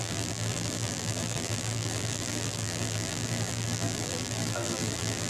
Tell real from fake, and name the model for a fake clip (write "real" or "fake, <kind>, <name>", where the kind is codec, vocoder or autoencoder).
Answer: fake, vocoder, BigVGAN v2